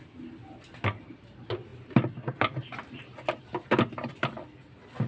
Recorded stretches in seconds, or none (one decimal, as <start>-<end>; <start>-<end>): 0.0-5.1